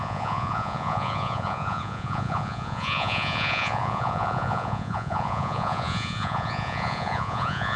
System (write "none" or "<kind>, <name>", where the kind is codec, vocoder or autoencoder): vocoder, Vocos